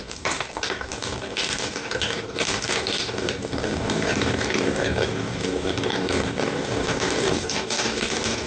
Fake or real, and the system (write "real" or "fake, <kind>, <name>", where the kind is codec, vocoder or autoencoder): fake, codec, DAC